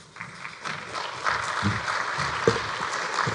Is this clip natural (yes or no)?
yes